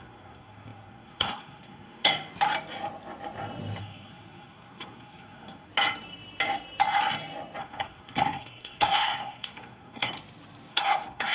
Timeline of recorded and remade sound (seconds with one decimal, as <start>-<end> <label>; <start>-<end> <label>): 0.0-2.1 remade; 2.1-3.8 recorded; 3.8-5.7 remade; 5.7-7.6 recorded; 7.6-10.1 remade; 10.1-10.7 recorded; 10.7-11.3 remade